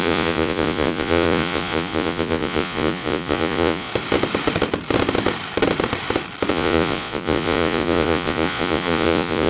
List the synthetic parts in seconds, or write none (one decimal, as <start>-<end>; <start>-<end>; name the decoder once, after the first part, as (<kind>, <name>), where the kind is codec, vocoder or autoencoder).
0.0-3.9 (vocoder, Vocos); 6.5-9.5